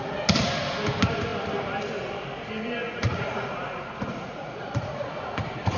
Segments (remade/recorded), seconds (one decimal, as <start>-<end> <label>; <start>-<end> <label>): 0.0-2.8 recorded; 2.8-5.8 remade